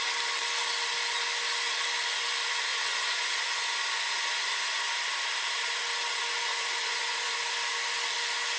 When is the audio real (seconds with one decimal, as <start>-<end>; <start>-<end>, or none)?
0.0-2.7; 4.9-6.5; 7.4-8.6

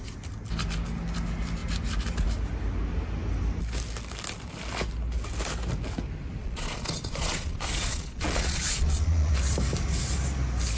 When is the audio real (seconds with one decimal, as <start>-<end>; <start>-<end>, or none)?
0.0-6.4; 9.3-10.8

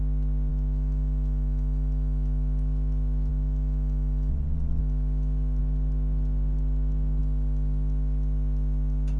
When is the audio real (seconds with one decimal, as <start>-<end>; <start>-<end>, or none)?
0.0-4.3; 4.8-9.2

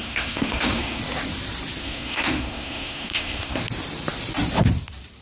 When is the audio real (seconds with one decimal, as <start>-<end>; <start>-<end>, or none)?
1.0-1.8; 3.6-5.2

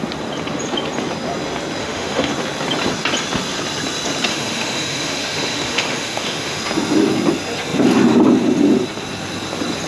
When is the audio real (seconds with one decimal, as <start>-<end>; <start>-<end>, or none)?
0.0-1.8; 2.3-4.3; 6.6-9.9

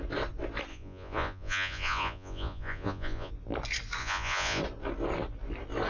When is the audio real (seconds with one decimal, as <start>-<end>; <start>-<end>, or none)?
0.0-0.7; 3.3-4.0; 4.6-5.9

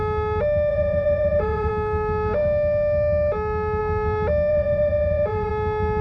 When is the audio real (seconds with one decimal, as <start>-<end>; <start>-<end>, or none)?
0.0-0.7; 1.7-4.5; 5.5-6.0

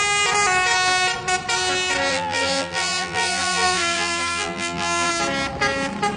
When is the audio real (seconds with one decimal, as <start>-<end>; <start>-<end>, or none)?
0.0-2.1; 5.1-6.2